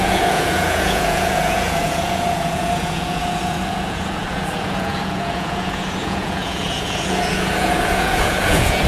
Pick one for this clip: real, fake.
fake